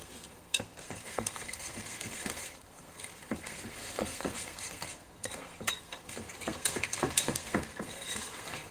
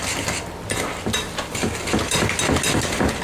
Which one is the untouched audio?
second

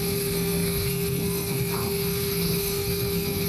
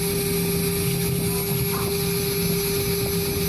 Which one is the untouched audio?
second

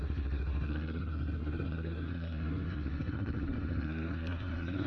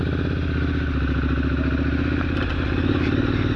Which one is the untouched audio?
second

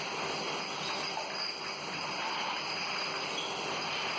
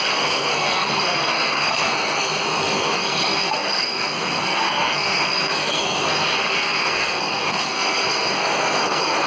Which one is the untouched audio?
first